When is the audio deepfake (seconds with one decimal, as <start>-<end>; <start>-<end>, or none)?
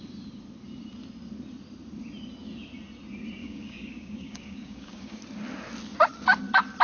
3.4-5.2